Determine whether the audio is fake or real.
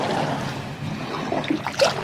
real